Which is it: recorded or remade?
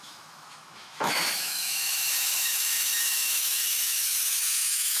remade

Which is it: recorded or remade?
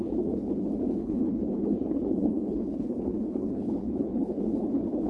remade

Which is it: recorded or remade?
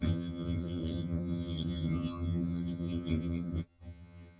remade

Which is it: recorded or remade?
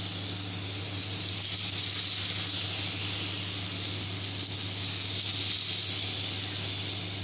recorded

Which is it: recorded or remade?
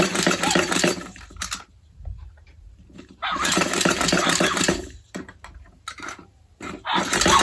remade